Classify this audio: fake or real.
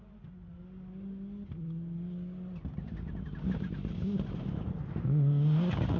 real